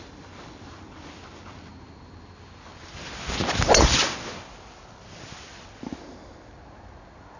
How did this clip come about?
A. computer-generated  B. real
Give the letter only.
B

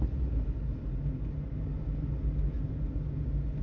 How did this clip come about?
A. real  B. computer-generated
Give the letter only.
A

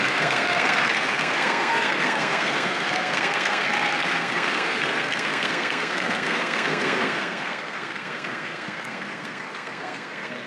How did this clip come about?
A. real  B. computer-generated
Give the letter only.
B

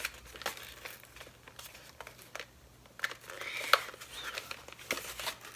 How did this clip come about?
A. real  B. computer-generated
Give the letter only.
A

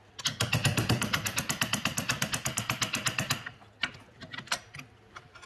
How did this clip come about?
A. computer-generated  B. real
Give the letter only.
B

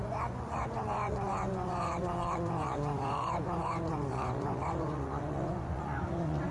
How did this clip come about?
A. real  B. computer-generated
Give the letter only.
B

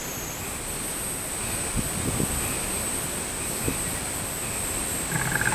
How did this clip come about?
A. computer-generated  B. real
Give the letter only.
B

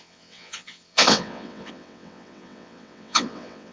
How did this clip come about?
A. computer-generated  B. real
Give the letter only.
A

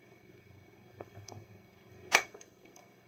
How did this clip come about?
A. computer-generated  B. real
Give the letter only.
A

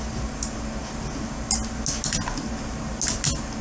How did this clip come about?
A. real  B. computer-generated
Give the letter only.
A